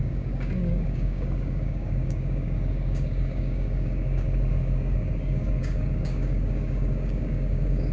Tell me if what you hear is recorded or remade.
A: remade